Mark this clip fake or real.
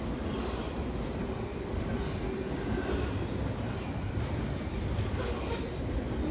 real